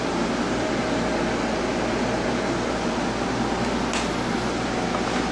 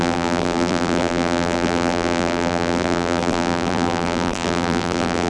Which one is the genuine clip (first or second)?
first